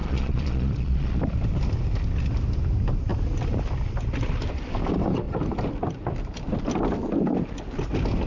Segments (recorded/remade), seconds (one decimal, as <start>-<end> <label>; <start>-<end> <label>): 0.0-1.2 remade; 1.2-8.3 recorded